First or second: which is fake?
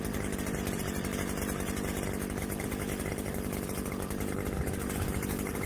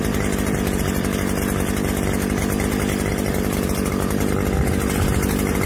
first